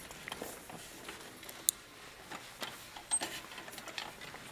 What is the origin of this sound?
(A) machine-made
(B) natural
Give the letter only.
B